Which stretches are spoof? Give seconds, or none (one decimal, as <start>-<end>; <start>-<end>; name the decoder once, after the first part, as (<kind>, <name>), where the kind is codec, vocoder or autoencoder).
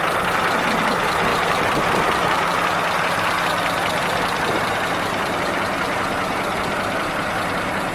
1.3-2.5 (vocoder, BigVGAN v2)